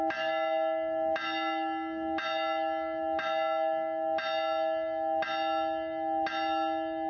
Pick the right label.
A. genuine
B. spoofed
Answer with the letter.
A